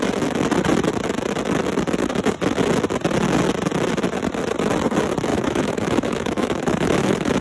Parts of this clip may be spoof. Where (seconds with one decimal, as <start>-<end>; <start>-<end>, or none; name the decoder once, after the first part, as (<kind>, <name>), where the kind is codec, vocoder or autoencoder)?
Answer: 5.3-7.4 (autoencoder, DAC-VAE)